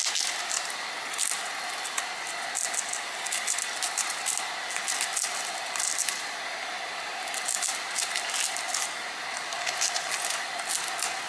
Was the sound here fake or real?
real